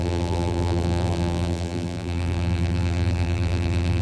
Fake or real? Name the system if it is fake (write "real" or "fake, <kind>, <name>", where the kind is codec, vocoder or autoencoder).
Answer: fake, vocoder, BigVGAN v2